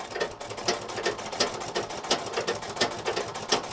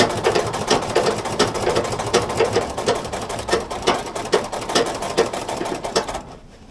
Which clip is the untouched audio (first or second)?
first